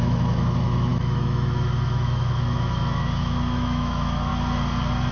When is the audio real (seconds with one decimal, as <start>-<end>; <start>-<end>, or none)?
4.3-5.1